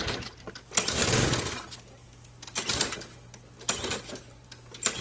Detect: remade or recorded recorded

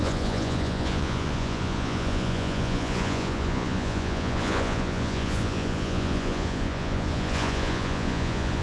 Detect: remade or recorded remade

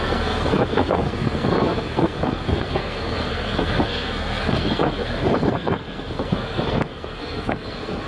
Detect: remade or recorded remade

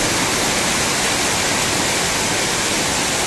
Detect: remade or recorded recorded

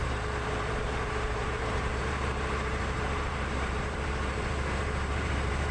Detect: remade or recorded remade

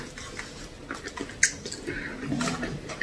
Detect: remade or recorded recorded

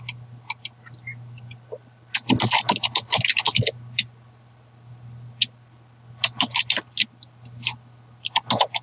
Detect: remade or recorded recorded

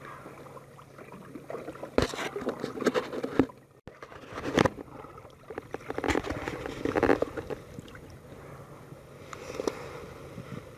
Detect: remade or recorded recorded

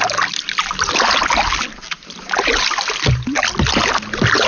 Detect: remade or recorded recorded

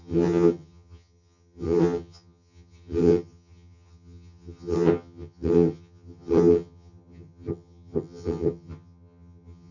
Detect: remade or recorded remade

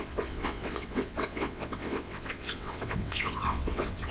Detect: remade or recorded remade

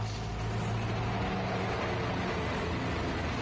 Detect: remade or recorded recorded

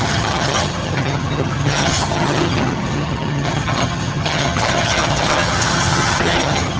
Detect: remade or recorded remade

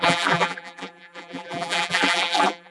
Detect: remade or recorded remade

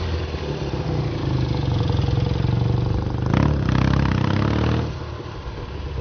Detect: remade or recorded recorded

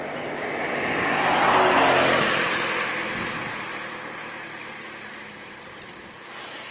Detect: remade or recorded recorded